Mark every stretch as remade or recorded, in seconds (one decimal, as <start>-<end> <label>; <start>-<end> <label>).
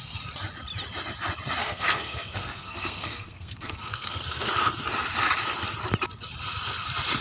0.0-1.6 recorded; 1.6-4.5 remade; 4.5-7.2 recorded